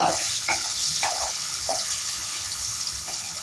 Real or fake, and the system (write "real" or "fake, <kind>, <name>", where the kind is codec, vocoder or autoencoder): fake, codec, HILCodec